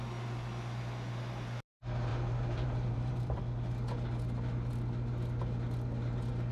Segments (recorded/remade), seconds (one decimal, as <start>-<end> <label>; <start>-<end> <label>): 0.0-2.1 recorded; 2.1-3.4 remade; 3.4-6.5 recorded